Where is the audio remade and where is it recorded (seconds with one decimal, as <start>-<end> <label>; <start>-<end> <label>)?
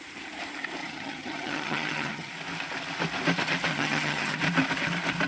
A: 0.0-0.8 recorded; 0.8-2.3 remade; 2.3-3.7 recorded; 3.7-4.4 remade; 4.4-5.3 recorded